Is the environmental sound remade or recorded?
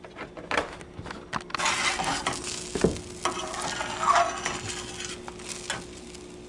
recorded